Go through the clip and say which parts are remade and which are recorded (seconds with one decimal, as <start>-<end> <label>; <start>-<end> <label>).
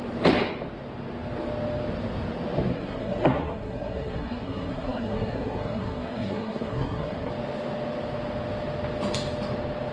0.0-2.7 recorded; 2.7-7.3 remade; 7.3-9.9 recorded